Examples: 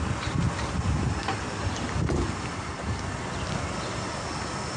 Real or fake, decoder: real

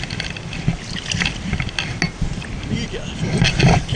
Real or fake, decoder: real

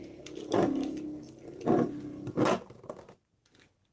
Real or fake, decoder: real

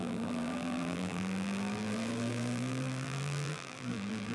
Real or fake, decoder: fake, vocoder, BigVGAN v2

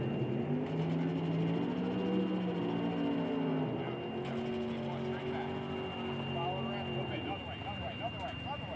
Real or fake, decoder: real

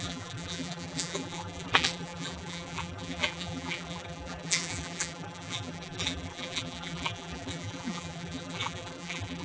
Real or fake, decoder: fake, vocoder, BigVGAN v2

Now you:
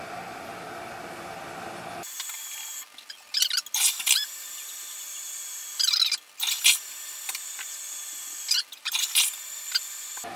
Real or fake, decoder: real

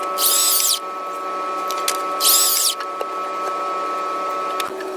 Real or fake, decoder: real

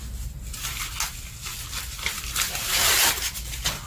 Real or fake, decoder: real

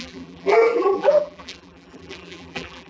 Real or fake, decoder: fake, vocoder, BigVGAN v2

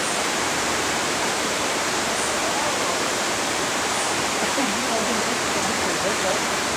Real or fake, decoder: fake, vocoder, BigVGAN v2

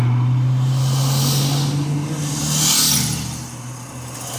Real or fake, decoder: real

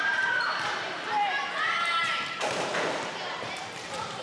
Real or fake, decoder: fake, vocoder, BigVGAN v2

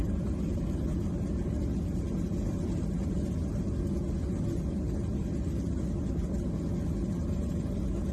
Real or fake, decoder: real